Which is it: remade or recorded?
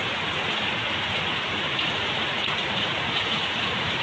remade